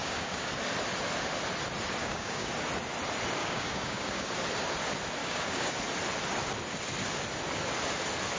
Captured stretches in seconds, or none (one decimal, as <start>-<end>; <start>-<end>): 0.5-2.0; 2.5-3.4; 4.3-5.2; 5.7-8.4

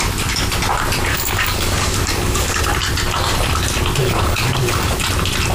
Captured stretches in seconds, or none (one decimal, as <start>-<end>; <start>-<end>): 0.0-1.1; 2.6-4.0; 5.0-5.5

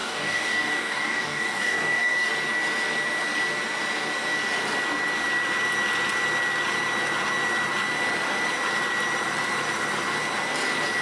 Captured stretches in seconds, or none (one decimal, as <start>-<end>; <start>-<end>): 2.3-11.0

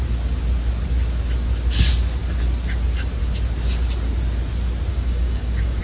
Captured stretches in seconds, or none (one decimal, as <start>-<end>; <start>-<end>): 0.0-4.9

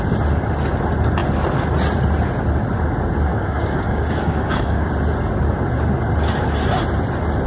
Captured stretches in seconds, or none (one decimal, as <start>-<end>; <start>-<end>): 0.0-3.3; 4.9-7.5

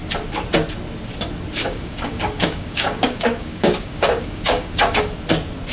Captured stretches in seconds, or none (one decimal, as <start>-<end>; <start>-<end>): 0.0-1.6; 5.0-5.7

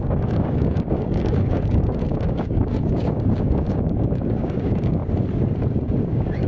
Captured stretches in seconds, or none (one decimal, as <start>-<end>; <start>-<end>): 5.0-6.1